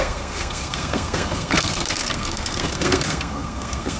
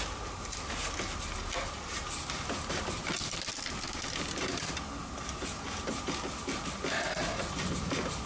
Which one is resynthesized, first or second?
first